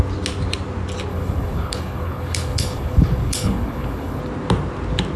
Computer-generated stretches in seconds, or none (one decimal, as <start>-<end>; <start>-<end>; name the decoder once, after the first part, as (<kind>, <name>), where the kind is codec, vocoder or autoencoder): 1.1-4.2 (codec, HILCodec)

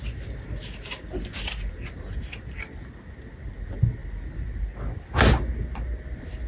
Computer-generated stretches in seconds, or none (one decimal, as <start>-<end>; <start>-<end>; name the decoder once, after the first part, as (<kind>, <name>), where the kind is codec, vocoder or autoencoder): none

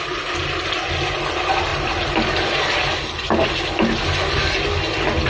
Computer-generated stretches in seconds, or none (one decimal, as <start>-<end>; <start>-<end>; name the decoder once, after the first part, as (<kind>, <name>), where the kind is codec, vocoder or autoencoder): none

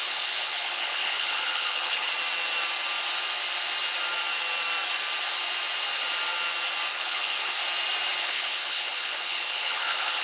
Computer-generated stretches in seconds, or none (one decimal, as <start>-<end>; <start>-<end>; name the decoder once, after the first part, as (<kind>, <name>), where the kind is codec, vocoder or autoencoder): 0.0-2.1 (codec, HILCodec); 6.9-7.6; 8.2-10.2

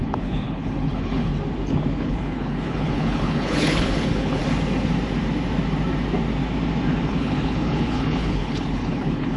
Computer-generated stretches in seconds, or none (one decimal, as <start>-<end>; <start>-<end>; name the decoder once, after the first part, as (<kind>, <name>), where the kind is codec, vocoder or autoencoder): 0.0-1.3 (codec, HILCodec); 2.0-4.4; 7.1-9.4

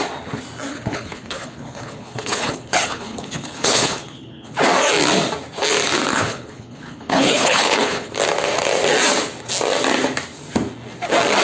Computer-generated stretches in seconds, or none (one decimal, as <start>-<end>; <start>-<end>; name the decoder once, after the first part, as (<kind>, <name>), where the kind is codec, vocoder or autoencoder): 0.7-4.6 (codec, HILCodec); 6.1-8.1